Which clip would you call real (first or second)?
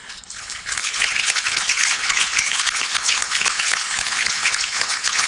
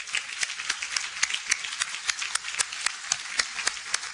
second